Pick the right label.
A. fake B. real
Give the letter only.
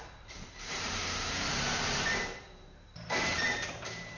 A